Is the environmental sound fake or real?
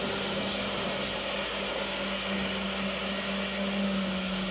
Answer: real